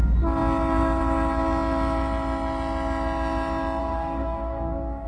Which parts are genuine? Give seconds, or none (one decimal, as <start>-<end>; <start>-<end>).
0.0-3.8